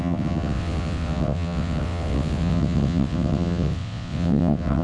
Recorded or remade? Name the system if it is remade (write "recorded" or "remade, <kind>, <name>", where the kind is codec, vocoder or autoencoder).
remade, vocoder, WaveNeXt